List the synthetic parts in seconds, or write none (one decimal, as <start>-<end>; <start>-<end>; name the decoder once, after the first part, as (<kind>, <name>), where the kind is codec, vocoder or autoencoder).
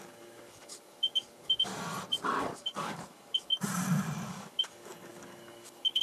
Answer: 0.0-1.7 (codec, DAC); 2.4-3.5; 4.3-6.0